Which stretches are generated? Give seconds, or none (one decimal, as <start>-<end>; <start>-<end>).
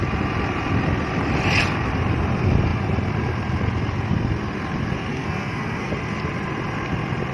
5.1-5.9